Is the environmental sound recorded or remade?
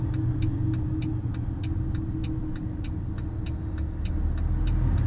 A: recorded